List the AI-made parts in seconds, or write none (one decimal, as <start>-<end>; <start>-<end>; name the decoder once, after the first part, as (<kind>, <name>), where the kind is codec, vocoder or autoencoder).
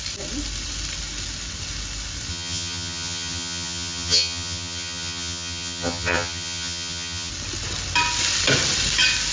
2.3-7.3 (vocoder, HiFi-GAN)